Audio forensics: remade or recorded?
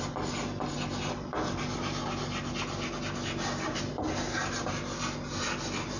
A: recorded